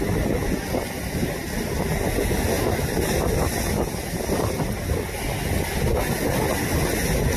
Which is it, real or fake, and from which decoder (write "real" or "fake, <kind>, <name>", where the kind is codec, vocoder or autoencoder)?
real